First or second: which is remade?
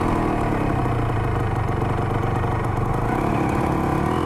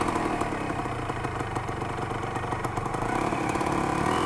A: second